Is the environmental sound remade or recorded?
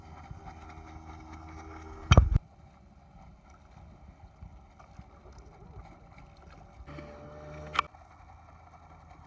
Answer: recorded